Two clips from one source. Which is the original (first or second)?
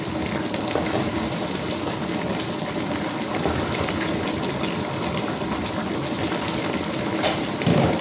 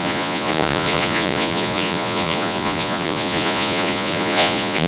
first